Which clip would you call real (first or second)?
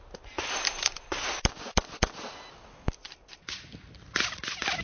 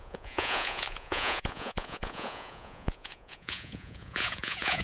first